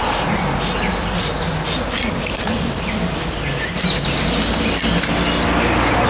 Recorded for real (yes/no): yes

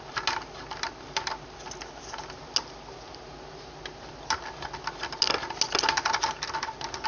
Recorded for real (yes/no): yes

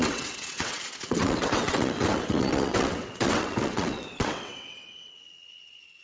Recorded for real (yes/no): no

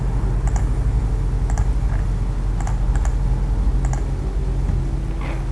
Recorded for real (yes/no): yes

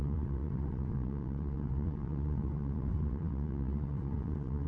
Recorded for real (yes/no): no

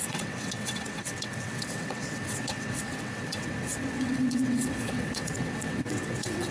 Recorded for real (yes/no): no